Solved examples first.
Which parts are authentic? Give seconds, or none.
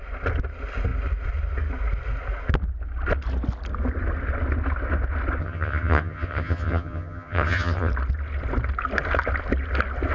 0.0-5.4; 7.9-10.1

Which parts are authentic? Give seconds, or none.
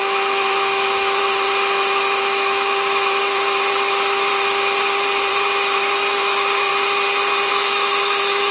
1.2-2.2; 4.3-5.3; 6.7-7.5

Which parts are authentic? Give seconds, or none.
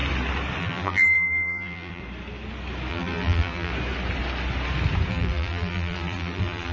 0.0-0.6; 2.0-2.9; 3.7-5.1